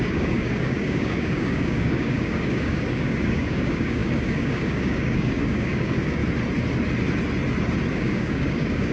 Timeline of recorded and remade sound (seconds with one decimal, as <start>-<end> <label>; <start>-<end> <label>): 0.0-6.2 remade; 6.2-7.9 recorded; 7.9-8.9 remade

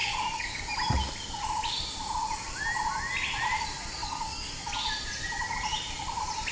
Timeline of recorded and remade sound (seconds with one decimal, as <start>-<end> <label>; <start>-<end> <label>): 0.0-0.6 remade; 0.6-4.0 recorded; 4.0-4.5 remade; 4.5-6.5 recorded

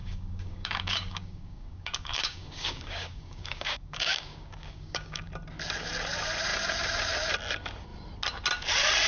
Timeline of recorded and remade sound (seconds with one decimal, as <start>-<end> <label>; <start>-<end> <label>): 0.0-5.3 remade; 5.3-9.1 recorded

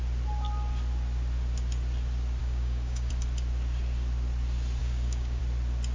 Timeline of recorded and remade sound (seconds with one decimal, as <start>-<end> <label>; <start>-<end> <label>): 0.0-2.4 recorded; 2.4-3.1 remade; 3.1-4.8 recorded; 4.8-5.4 remade; 5.4-5.9 recorded

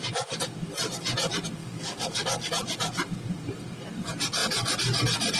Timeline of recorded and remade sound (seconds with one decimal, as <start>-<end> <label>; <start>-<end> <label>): 0.0-1.6 recorded; 1.6-2.5 remade; 2.5-5.4 recorded

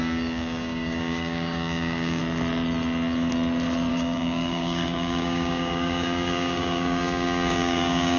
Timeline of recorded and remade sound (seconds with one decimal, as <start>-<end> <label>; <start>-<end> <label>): 0.0-2.2 remade; 2.2-3.9 recorded; 3.9-8.2 remade